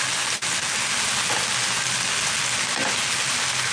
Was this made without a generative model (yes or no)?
yes